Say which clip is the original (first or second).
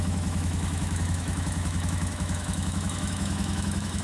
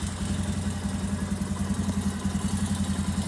second